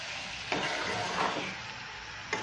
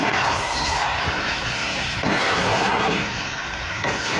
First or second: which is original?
first